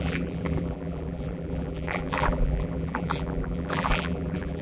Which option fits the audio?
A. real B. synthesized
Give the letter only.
B